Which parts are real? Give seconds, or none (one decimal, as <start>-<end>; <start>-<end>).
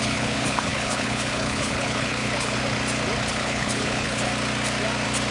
2.6-3.3; 4.3-5.3